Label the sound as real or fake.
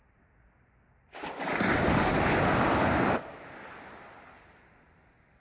real